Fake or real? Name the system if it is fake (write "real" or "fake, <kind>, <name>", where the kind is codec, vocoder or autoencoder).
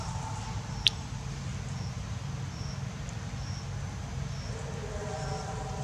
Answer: real